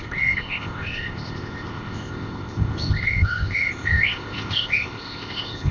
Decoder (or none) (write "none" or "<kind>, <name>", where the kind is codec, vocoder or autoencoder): codec, ZipCodec